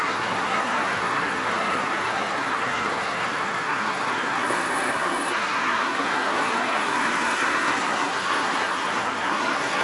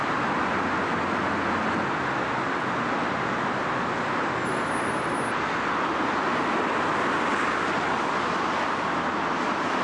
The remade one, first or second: first